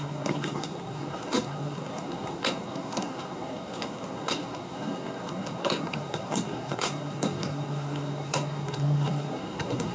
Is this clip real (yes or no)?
no